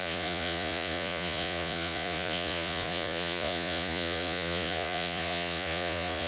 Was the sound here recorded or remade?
remade